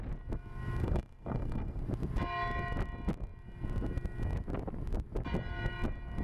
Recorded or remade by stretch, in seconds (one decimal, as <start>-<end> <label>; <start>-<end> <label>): 0.0-0.8 recorded; 0.8-1.8 remade; 1.8-6.2 recorded

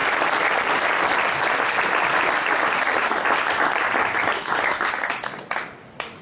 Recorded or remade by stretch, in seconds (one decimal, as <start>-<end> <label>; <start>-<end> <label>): 0.0-6.2 recorded

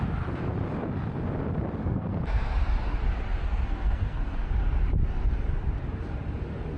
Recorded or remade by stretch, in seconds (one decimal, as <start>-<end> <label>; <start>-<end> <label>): 0.0-1.8 recorded; 1.8-2.4 remade; 2.4-3.4 recorded; 3.4-4.5 remade; 4.5-6.8 recorded

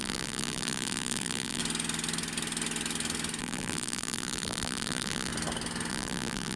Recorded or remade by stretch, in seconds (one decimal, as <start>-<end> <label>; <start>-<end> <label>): 0.0-1.6 remade; 1.6-3.4 recorded; 3.4-5.3 remade; 5.3-5.9 recorded; 5.9-6.6 remade